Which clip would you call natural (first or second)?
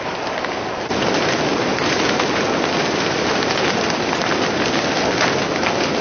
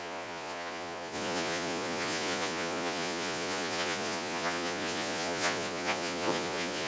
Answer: first